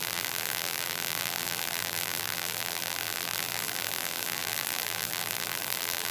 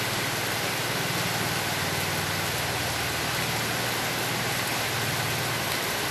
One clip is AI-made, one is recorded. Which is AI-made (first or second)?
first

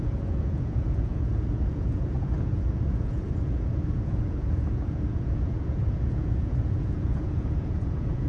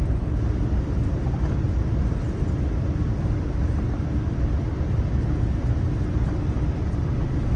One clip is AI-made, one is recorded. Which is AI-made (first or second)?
first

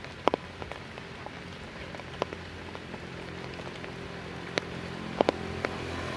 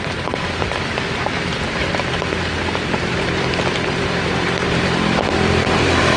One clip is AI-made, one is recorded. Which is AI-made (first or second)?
second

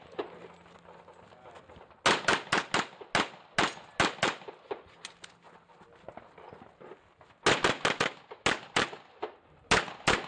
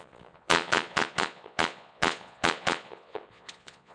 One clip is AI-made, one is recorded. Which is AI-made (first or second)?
second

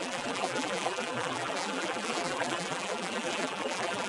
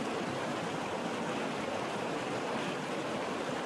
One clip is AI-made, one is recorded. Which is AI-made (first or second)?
first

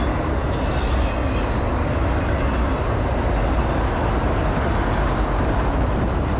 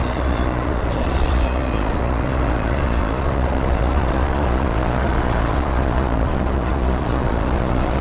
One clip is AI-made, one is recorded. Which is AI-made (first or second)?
second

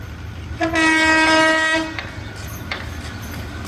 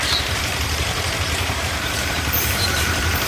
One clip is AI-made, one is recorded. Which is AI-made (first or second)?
second